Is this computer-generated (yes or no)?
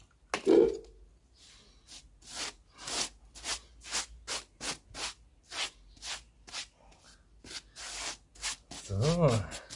no